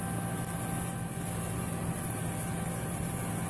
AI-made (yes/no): no